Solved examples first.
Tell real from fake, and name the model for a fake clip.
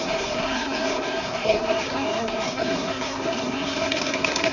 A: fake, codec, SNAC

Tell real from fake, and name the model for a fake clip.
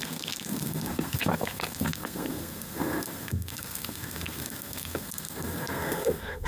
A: fake, codec, SNAC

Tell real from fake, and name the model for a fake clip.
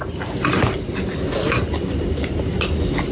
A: real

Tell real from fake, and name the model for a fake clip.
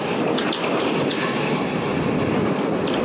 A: real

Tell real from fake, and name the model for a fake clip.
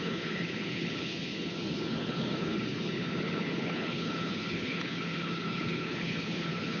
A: fake, codec, HILCodec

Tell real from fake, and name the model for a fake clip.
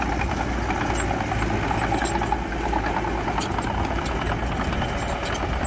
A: real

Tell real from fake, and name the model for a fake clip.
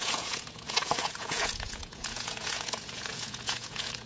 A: fake, vocoder, Vocos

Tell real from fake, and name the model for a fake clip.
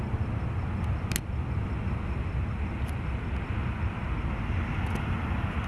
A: real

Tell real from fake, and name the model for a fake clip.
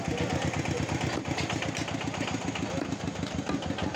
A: real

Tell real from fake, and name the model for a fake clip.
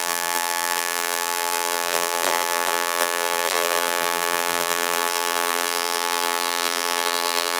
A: fake, vocoder, BigVGAN v2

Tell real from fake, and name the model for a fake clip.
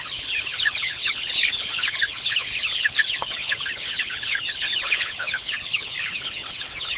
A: fake, codec, HILCodec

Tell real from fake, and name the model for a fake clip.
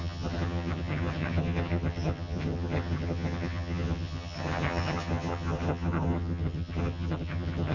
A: fake, vocoder, HiFi-GAN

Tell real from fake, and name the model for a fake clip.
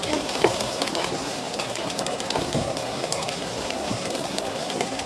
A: fake, codec, SNAC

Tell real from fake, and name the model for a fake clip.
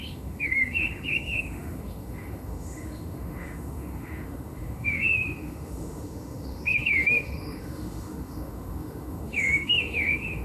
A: fake, autoencoder, DAC-VAE